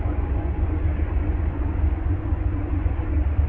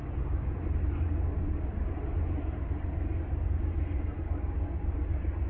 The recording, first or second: second